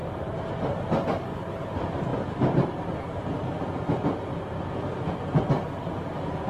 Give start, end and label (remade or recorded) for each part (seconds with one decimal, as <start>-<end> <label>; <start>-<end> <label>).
0.0-6.5 recorded